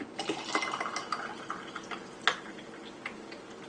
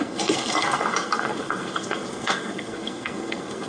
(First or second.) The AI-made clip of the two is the second